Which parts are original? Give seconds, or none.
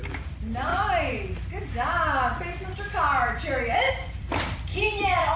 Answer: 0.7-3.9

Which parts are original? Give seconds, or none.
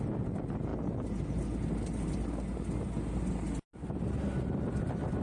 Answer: 0.0-5.2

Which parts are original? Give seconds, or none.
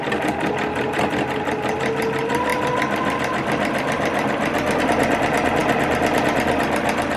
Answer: 0.0-7.2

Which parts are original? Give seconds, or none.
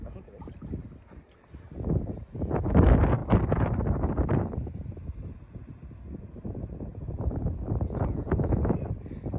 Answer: 0.0-3.2; 6.5-6.9; 7.5-9.4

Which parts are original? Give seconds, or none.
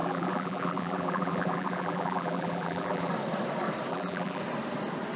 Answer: 3.1-3.9; 4.4-5.2